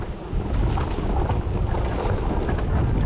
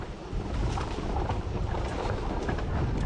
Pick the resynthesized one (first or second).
second